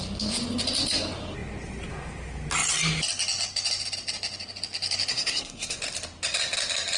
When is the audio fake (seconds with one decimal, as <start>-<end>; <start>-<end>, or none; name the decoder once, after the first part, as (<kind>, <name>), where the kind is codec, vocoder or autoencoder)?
5.1-5.8 (codec, SNAC)